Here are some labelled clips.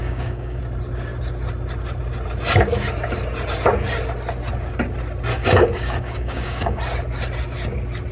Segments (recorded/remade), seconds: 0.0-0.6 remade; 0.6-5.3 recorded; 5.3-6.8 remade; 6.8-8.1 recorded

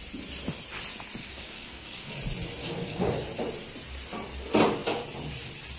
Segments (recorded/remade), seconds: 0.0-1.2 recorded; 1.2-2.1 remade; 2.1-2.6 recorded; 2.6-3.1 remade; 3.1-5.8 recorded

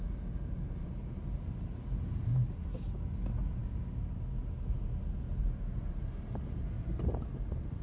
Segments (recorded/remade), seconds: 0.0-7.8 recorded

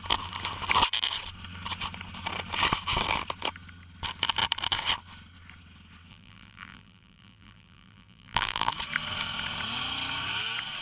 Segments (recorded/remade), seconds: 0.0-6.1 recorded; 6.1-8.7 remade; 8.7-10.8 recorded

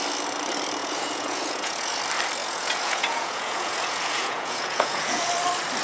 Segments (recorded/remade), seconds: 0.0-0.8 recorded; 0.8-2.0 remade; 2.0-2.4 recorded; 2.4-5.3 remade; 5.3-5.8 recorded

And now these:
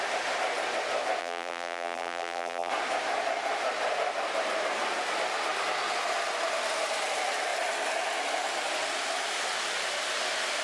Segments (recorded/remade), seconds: 0.0-1.2 recorded; 1.2-2.7 remade; 2.7-10.6 recorded

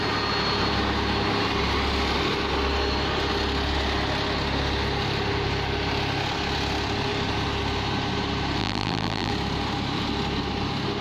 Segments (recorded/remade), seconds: 0.0-8.6 recorded; 8.6-9.3 remade; 9.3-11.0 recorded